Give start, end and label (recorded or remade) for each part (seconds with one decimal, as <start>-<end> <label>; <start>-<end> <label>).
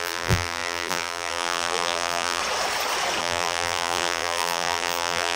0.0-2.4 remade; 2.4-3.2 recorded; 3.2-5.4 remade